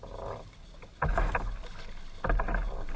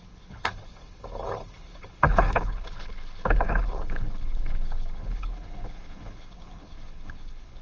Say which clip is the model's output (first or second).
second